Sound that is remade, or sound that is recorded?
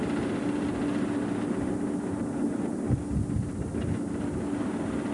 recorded